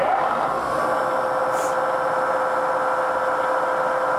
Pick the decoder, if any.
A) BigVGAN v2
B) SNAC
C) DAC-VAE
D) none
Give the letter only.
D